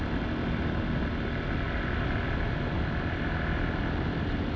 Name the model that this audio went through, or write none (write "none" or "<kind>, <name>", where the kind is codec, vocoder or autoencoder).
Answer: none